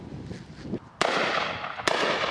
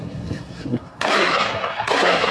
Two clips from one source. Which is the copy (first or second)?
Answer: second